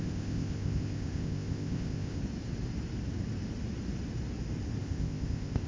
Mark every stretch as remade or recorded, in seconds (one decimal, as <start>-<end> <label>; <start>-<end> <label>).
0.0-2.2 remade; 2.2-4.8 recorded; 4.8-5.7 remade